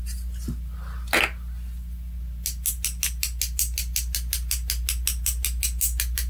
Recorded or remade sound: recorded